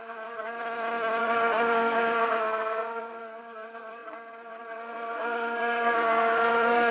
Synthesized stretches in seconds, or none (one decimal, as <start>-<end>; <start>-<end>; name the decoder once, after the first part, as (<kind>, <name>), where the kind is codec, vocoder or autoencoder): 0.0-0.6 (codec, SNAC); 1.2-6.9